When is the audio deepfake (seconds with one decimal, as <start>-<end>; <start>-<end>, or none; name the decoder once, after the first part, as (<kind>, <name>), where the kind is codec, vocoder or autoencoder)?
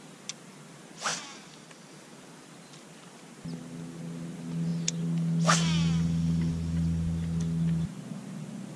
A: none